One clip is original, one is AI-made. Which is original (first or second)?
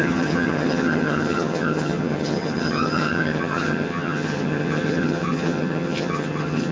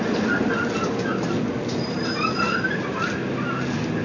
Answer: second